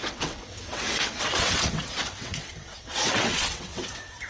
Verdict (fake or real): fake